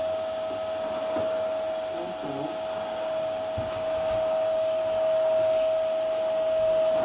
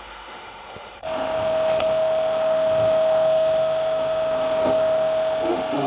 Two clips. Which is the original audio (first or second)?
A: first